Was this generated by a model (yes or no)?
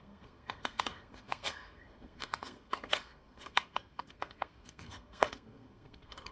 yes